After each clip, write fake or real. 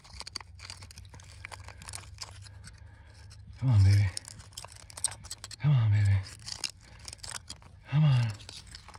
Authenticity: real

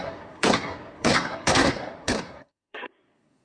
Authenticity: fake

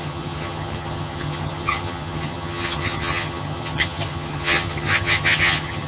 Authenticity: fake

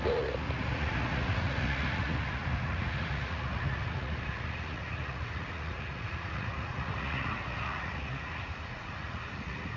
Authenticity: fake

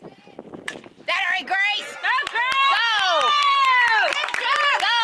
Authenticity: real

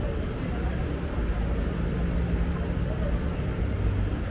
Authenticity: real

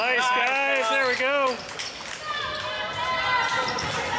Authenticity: real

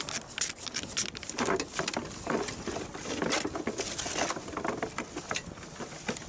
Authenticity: real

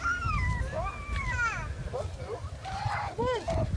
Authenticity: real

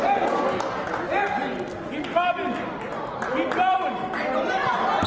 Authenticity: real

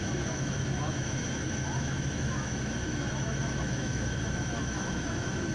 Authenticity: fake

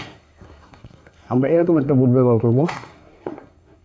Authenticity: fake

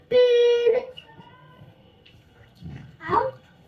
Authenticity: fake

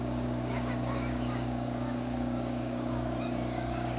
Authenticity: fake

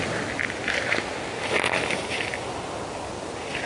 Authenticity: real